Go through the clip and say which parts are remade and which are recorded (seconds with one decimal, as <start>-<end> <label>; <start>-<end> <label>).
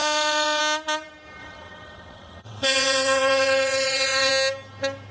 0.0-0.6 remade; 0.6-1.4 recorded; 1.4-4.3 remade; 4.3-5.1 recorded